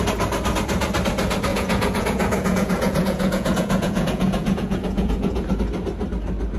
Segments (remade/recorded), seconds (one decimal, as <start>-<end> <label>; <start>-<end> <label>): 0.0-1.5 recorded; 1.5-5.5 remade; 5.5-6.6 recorded

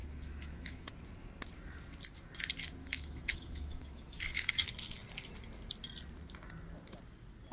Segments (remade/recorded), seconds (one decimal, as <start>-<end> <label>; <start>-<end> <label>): 0.0-0.9 remade; 0.9-2.8 recorded; 2.8-4.5 remade; 4.5-7.5 recorded

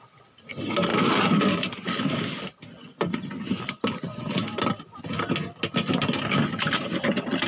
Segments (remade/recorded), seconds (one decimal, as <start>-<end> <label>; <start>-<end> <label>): 0.0-0.9 recorded; 0.9-1.5 remade; 1.5-7.5 recorded

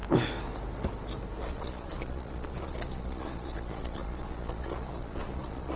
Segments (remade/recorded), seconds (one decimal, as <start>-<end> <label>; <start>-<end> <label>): 0.0-1.4 recorded; 1.4-5.8 remade